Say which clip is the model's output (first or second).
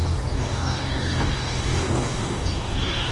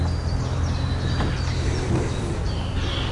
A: first